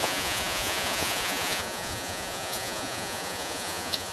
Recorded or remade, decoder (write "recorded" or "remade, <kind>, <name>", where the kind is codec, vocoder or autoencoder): remade, vocoder, Vocos